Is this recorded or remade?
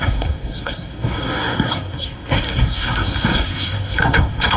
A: remade